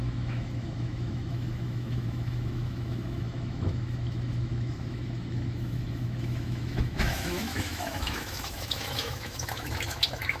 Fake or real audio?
fake